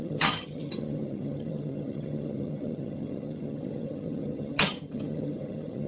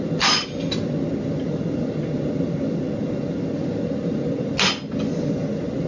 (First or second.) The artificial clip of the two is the first